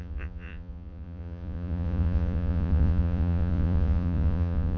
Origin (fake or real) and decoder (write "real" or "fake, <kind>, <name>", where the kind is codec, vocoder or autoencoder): fake, vocoder, Vocos